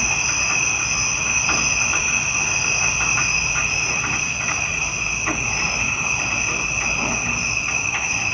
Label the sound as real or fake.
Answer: real